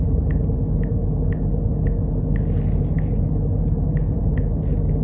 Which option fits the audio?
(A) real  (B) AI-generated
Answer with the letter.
A